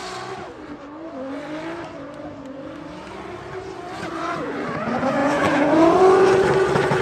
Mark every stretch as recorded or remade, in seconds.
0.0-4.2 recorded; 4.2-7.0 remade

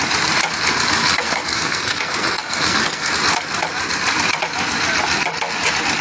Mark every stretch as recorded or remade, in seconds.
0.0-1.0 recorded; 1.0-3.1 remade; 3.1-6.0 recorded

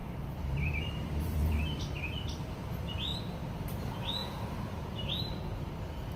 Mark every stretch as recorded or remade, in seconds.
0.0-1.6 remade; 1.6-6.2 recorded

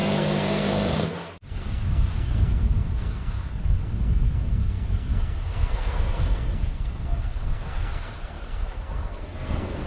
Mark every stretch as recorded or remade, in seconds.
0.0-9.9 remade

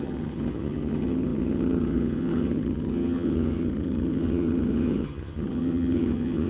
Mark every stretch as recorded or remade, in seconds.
0.0-6.5 remade